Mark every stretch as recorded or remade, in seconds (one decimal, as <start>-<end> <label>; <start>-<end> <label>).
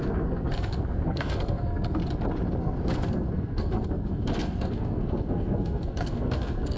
0.0-2.0 remade; 2.0-2.6 recorded; 2.6-6.8 remade